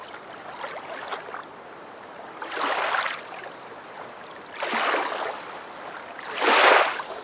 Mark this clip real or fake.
real